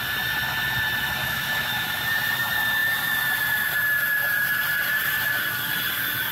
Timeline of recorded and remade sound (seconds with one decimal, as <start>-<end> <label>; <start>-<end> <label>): 0.0-1.2 recorded; 1.2-2.0 remade; 2.0-6.3 recorded